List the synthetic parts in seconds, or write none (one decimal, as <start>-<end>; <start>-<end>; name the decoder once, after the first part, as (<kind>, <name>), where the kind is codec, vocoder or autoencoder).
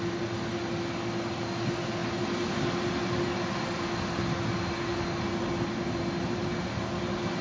none